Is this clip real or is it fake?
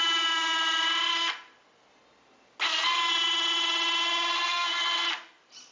real